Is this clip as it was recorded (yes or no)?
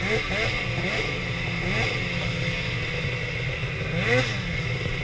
yes